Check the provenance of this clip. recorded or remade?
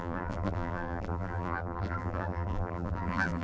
remade